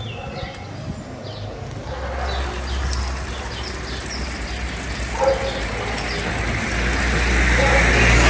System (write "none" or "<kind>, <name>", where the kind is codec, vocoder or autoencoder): none